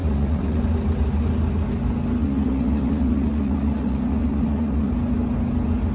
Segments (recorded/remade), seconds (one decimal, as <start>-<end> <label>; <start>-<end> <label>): 0.0-0.6 remade; 0.6-2.2 recorded; 2.2-4.9 remade; 4.9-5.9 recorded

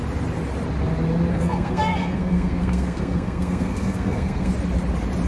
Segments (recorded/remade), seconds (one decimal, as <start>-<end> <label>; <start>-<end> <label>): 0.0-1.3 recorded; 1.3-4.5 remade; 4.5-5.3 recorded

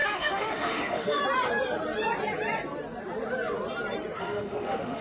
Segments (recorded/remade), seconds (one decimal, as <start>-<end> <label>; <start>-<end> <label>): 0.0-1.2 remade; 1.2-4.2 recorded; 4.2-5.0 remade